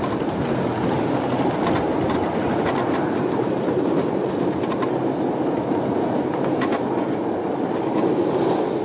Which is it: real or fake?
real